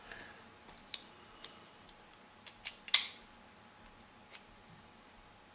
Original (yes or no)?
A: yes